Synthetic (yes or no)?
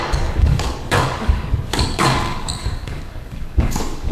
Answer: yes